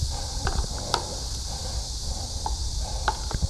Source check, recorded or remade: recorded